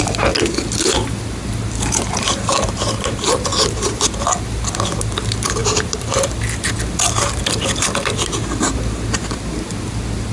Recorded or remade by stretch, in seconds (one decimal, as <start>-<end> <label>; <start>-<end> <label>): 0.0-5.6 recorded; 5.6-6.4 remade; 6.4-10.3 recorded